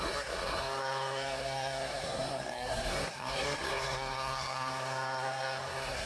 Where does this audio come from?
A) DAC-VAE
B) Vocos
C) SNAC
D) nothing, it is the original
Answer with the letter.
C